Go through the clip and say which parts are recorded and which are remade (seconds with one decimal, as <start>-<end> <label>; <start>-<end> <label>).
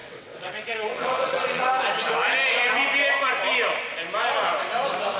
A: 0.0-1.7 remade; 1.7-5.2 recorded